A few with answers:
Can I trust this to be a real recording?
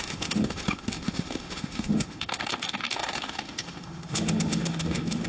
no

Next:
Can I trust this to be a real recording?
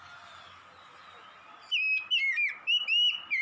yes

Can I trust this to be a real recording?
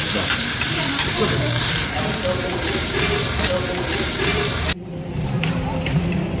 no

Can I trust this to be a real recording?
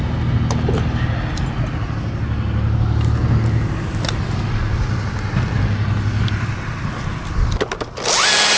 yes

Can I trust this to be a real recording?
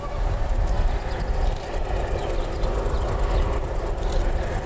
yes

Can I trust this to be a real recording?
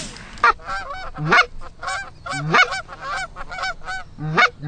yes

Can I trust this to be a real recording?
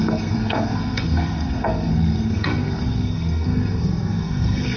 no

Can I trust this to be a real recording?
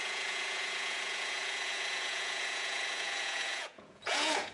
no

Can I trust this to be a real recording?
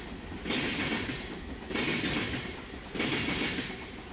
yes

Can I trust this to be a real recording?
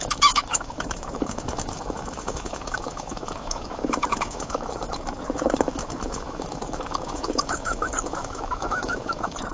no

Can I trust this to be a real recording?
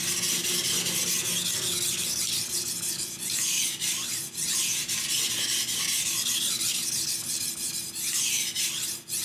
yes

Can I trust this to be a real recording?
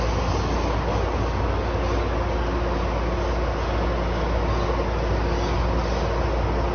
yes